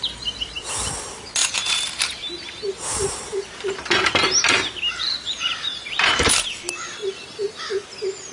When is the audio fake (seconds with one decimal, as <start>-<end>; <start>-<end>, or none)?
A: 1.4-6.3; 7.0-7.6